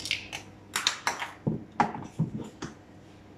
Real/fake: real